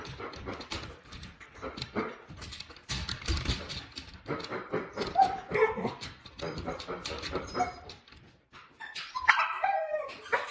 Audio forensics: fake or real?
fake